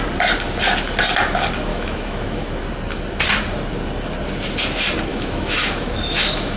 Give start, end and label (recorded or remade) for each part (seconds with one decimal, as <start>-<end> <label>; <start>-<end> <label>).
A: 0.0-1.7 recorded; 1.7-2.5 remade; 2.5-5.1 recorded; 5.1-6.6 remade